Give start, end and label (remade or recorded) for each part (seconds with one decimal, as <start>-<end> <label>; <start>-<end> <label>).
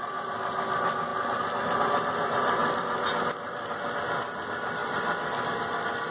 0.0-1.1 recorded; 1.1-1.8 remade; 1.8-2.6 recorded; 2.6-3.1 remade; 3.1-6.1 recorded